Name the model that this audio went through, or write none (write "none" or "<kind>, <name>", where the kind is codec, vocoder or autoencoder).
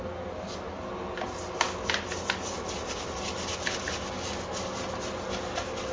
none